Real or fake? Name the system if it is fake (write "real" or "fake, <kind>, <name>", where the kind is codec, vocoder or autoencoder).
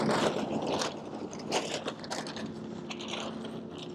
real